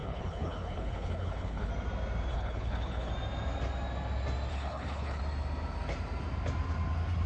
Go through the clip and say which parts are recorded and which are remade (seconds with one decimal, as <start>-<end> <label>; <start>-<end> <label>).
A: 0.0-1.7 remade; 1.7-2.3 recorded; 2.3-3.1 remade; 3.1-4.5 recorded; 4.5-5.2 remade; 5.2-7.3 recorded

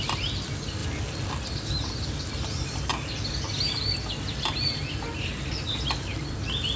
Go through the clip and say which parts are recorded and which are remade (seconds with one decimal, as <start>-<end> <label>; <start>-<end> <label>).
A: 0.0-0.8 recorded; 0.8-1.3 remade; 1.3-6.8 recorded

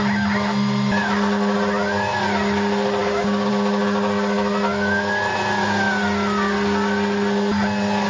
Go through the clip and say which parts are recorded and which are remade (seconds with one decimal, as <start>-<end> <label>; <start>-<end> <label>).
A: 0.0-3.0 recorded; 3.0-3.5 remade; 3.5-8.1 recorded

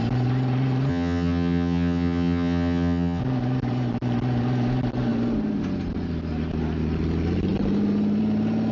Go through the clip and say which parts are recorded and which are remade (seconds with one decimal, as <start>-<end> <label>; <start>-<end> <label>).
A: 0.0-0.9 recorded; 0.9-3.2 remade; 3.2-8.7 recorded

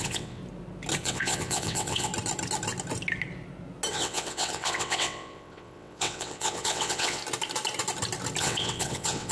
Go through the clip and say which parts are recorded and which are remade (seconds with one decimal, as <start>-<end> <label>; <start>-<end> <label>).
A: 0.0-0.4 remade; 0.4-1.0 recorded; 1.0-2.1 remade; 2.1-3.9 recorded; 3.9-7.2 remade; 7.2-8.4 recorded; 8.4-9.3 remade

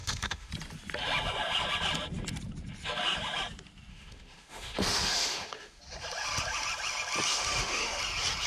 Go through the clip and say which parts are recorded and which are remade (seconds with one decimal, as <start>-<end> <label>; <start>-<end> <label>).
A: 0.0-0.5 remade; 0.5-3.9 recorded; 3.9-5.8 remade; 5.8-7.3 recorded; 7.3-8.0 remade; 8.0-8.5 recorded